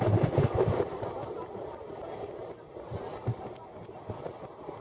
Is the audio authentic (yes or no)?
yes